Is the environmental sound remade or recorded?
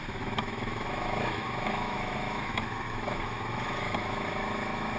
remade